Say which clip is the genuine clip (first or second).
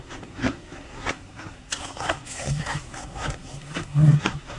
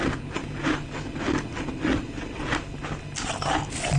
second